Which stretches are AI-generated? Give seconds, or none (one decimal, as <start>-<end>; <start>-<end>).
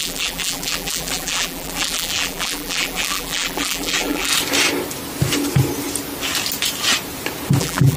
0.0-4.3; 7.6-8.0